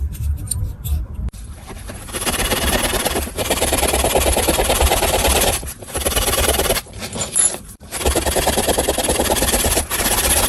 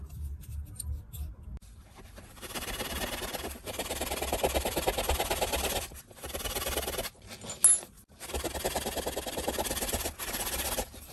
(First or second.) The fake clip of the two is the first